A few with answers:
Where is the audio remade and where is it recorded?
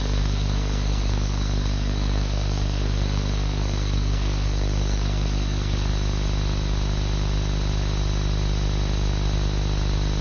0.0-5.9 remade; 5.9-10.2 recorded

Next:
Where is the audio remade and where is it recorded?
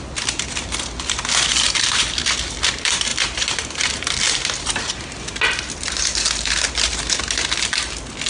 0.0-8.3 recorded